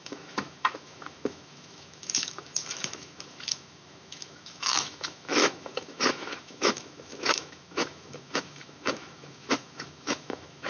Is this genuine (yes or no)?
no